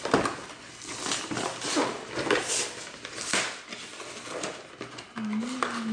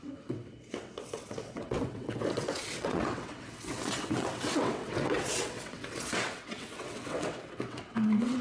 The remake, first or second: second